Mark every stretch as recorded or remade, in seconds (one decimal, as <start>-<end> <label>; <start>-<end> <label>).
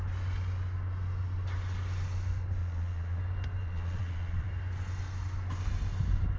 0.0-2.6 recorded; 2.6-3.2 remade; 3.2-3.6 recorded; 3.6-4.5 remade; 4.5-6.4 recorded